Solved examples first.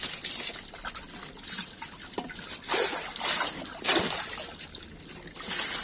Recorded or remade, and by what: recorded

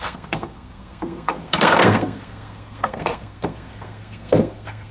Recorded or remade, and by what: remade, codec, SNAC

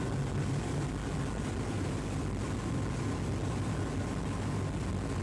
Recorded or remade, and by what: recorded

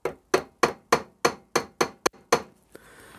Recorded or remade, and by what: recorded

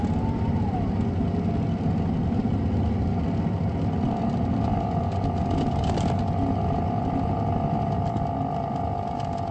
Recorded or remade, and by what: recorded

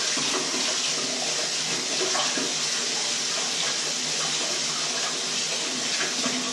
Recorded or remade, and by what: recorded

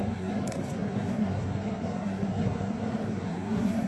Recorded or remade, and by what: remade, codec, SNAC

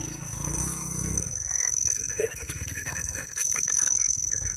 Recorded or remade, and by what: remade, codec, SNAC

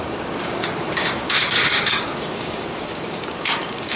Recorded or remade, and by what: remade, codec, DAC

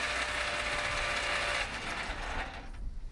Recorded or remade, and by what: recorded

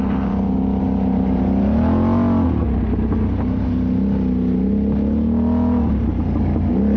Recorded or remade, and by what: recorded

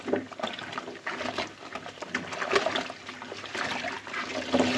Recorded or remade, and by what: recorded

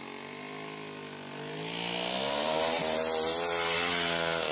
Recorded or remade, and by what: recorded